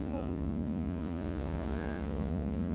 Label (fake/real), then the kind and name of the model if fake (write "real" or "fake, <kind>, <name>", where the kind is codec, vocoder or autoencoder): fake, vocoder, Vocos